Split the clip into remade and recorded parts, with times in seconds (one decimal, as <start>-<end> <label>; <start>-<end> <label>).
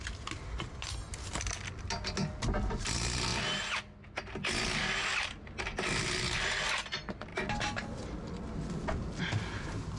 0.0-10.0 recorded